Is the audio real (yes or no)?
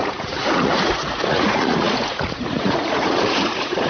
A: no